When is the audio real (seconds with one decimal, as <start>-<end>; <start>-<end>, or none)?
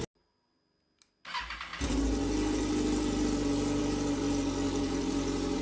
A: 0.0-5.6